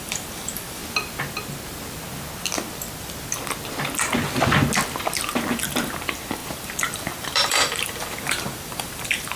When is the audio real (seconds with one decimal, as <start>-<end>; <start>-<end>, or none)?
0.8-5.5